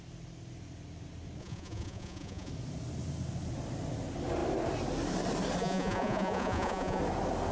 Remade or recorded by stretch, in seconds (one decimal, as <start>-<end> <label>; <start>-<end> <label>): 0.0-1.4 recorded; 1.4-2.5 remade; 2.5-5.6 recorded; 5.6-7.0 remade; 7.0-7.5 recorded